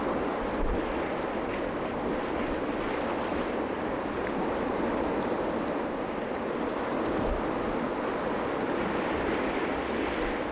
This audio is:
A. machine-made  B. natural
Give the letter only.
B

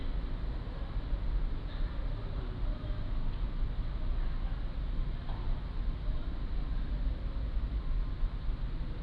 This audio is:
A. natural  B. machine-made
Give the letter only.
A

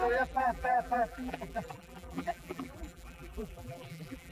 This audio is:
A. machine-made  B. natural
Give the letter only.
A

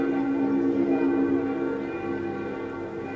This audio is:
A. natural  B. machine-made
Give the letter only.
A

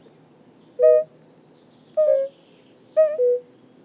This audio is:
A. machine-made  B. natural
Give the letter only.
B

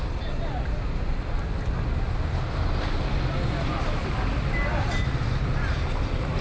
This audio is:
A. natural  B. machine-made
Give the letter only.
A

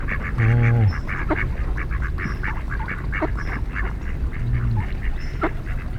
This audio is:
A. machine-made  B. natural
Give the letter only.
B